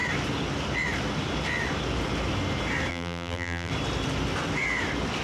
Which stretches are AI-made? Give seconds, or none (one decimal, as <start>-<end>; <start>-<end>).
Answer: 2.9-3.7